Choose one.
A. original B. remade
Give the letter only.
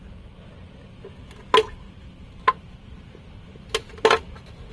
A